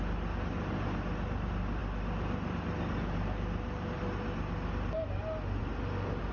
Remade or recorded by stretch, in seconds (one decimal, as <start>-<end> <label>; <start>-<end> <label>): 0.0-6.3 recorded